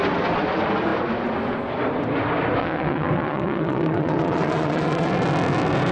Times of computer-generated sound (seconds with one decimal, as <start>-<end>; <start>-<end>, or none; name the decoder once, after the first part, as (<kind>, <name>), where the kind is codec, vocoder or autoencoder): 2.6-5.1 (vocoder, WaveNeXt)

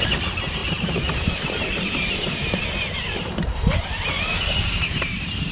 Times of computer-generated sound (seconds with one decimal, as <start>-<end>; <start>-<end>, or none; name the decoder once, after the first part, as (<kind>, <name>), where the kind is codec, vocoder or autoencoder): 0.6-3.9 (vocoder, BigVGAN v2); 4.3-5.5